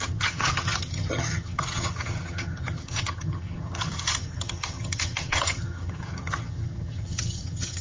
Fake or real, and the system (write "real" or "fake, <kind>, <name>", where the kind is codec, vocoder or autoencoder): fake, vocoder, HiFi-GAN